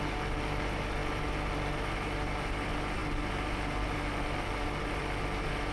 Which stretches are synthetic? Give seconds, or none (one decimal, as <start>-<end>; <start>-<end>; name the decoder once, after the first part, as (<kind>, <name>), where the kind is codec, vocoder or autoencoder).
none

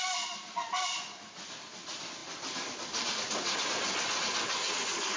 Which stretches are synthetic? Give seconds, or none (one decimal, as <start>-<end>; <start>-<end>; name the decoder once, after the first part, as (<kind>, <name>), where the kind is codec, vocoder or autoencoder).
none

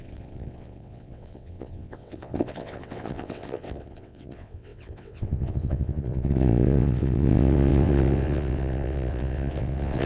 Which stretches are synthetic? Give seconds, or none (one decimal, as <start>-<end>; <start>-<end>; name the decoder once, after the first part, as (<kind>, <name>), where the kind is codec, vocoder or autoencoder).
0.0-10.1 (vocoder, WaveNeXt)

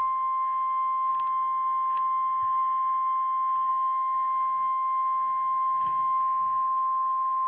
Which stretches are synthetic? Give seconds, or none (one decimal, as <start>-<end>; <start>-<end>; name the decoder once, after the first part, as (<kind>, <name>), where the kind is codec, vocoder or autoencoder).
0.0-7.5 (codec, SNAC)

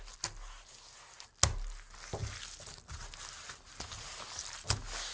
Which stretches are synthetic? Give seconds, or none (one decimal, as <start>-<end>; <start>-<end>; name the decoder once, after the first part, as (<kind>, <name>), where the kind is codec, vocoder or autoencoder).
none